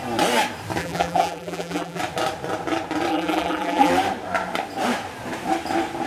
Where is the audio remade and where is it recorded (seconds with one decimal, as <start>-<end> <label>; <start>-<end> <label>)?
0.0-0.8 recorded; 0.8-2.0 remade; 2.0-3.1 recorded; 3.1-3.9 remade; 3.9-6.1 recorded